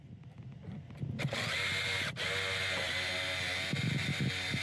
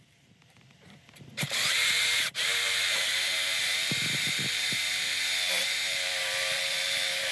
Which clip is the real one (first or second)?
first